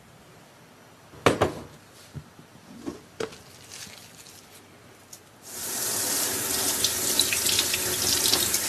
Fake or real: real